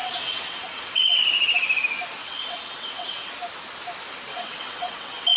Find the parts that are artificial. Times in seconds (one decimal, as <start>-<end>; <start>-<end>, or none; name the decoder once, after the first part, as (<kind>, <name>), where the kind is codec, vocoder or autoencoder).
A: 0.0-1.2 (vocoder, WaveNeXt); 2.2-3.3; 4.3-5.4